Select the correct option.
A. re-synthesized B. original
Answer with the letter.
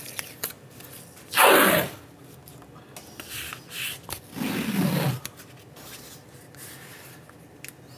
B